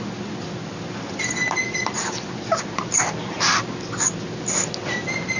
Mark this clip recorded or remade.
recorded